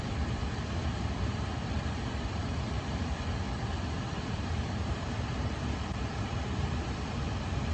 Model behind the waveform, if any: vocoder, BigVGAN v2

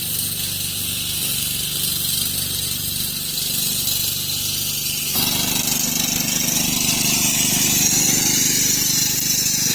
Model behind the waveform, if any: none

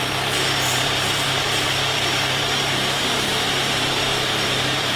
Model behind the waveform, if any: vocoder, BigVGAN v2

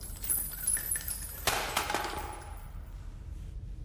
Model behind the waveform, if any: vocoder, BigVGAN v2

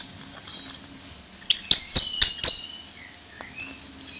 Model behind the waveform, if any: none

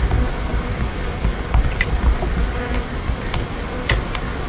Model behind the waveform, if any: none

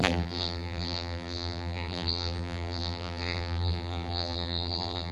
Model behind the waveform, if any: vocoder, BigVGAN v2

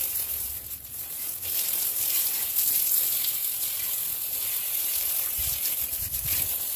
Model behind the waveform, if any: vocoder, BigVGAN v2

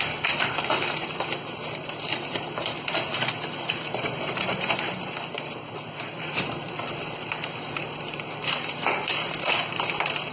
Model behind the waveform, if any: vocoder, BigVGAN v2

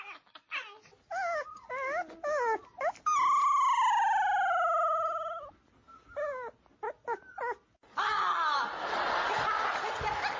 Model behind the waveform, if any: none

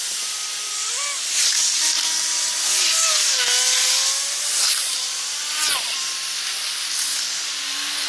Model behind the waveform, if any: none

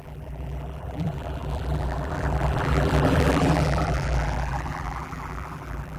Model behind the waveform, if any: vocoder, BigVGAN v2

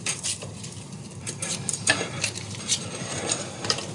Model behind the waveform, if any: vocoder, BigVGAN v2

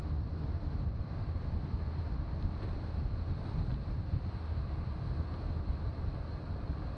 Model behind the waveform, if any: none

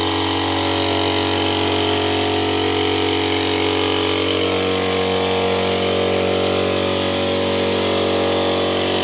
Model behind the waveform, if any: none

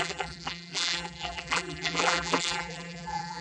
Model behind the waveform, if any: vocoder, BigVGAN v2